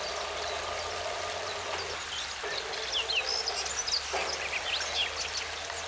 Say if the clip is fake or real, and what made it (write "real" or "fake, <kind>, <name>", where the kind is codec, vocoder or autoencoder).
real